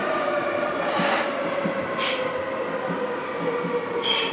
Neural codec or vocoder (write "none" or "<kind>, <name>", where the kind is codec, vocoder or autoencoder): none